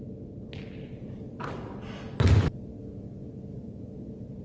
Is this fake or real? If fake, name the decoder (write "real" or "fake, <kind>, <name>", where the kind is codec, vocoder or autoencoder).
real